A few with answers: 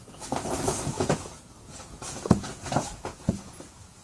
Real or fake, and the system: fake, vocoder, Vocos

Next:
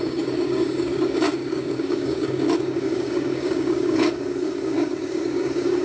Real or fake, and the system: fake, codec, DAC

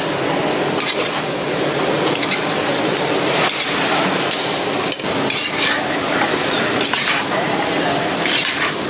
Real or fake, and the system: real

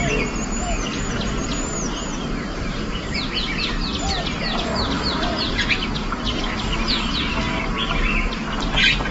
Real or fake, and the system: real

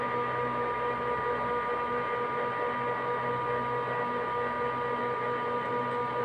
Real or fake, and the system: real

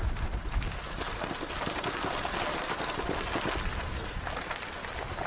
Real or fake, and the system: real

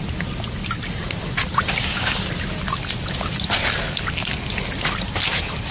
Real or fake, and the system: real